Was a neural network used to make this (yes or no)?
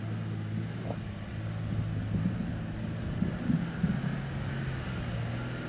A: no